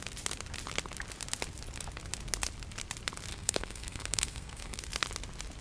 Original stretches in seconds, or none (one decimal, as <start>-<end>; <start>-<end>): 0.0-3.3; 4.8-5.6